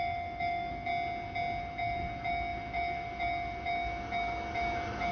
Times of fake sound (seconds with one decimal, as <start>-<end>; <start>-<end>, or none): 0.0-0.9; 1.6-5.1